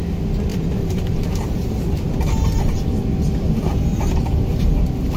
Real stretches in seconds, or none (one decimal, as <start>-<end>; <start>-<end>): 0.0-0.5; 1.8-5.2

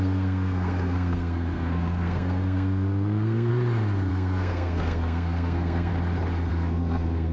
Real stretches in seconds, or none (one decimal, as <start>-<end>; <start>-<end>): 3.5-4.1; 5.9-6.5

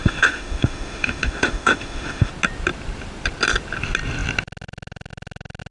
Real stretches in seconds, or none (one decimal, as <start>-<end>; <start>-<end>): 2.3-5.7

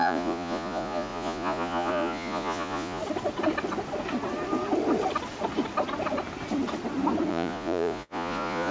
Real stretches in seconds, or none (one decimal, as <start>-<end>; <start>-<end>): 3.0-7.3

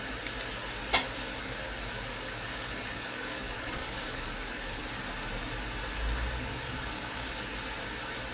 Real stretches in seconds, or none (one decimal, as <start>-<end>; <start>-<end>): 0.0-1.4; 4.8-6.5; 7.4-8.3